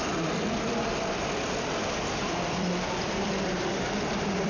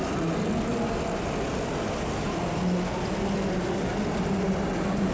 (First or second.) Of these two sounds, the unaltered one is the second